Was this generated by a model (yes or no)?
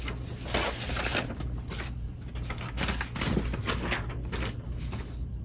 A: no